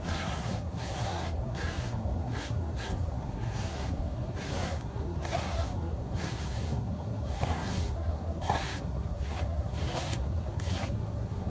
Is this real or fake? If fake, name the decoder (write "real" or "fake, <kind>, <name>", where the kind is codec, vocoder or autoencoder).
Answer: fake, codec, SNAC